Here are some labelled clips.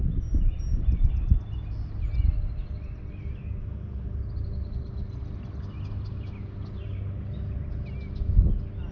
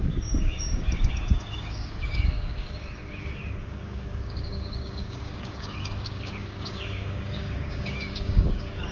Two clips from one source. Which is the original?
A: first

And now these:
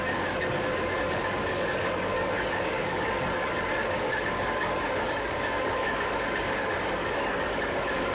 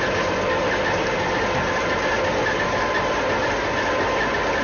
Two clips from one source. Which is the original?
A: second